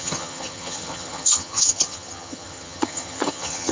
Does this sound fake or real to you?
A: fake